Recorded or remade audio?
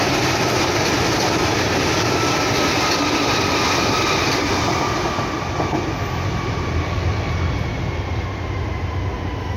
recorded